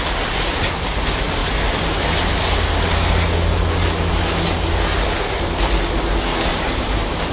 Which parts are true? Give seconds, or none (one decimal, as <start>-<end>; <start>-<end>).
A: 0.0-6.5